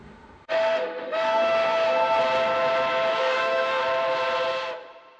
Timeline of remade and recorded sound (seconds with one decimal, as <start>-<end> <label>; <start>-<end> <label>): 0.0-2.2 remade; 2.2-3.1 recorded; 3.1-3.8 remade; 3.8-5.2 recorded